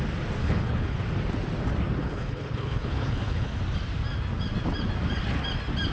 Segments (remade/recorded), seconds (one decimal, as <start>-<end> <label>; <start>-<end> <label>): 0.0-0.4 recorded; 0.4-1.0 remade; 1.0-2.0 recorded; 2.0-3.6 remade; 3.6-5.9 recorded